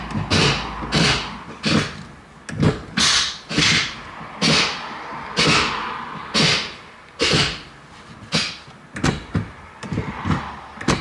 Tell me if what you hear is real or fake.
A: real